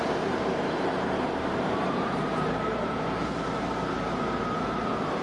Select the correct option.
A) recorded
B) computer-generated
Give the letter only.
B